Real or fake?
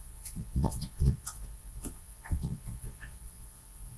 fake